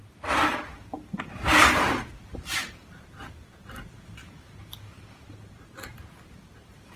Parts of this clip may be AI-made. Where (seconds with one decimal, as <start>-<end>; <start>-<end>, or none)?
none